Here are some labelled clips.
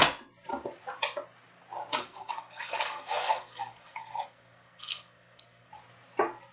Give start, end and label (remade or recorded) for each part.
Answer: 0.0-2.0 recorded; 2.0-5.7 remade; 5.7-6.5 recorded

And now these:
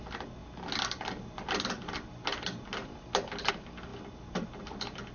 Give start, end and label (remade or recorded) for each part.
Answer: 0.0-5.1 recorded

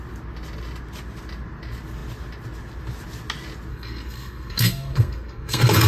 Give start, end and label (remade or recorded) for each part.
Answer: 0.0-3.7 recorded; 3.7-5.9 remade

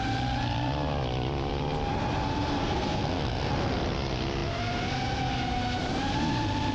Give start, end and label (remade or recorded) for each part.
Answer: 0.0-2.6 recorded; 2.6-3.5 remade; 3.5-6.7 recorded

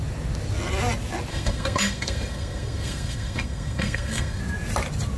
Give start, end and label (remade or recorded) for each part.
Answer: 0.0-1.3 recorded; 1.3-4.4 remade; 4.4-5.2 recorded

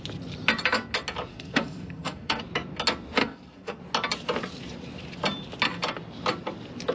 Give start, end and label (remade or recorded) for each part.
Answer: 0.0-1.3 recorded; 1.3-2.4 remade; 2.4-3.2 recorded; 3.2-3.8 remade; 3.8-6.9 recorded